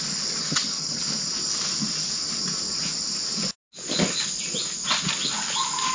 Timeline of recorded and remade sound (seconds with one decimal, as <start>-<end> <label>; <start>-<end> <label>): 0.0-0.4 recorded; 0.4-1.0 remade; 1.0-5.9 recorded